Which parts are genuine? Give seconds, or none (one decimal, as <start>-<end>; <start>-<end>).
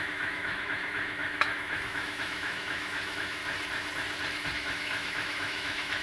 3.4-4.5